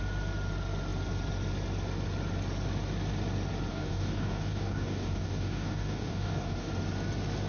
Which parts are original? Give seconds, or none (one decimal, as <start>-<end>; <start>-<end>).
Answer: 0.0-3.7; 6.7-7.5